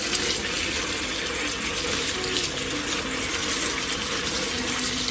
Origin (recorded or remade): recorded